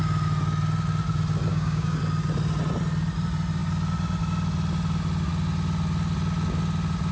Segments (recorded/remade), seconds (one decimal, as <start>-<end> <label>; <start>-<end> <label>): 0.0-1.5 recorded; 1.5-2.0 remade; 2.0-7.1 recorded